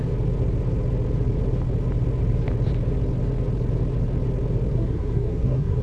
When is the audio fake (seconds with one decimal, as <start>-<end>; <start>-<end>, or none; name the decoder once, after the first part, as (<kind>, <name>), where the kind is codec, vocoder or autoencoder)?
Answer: 4.7-5.8 (codec, SNAC)